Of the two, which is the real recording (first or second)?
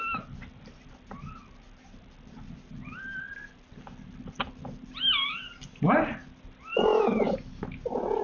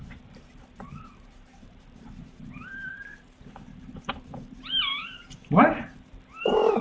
first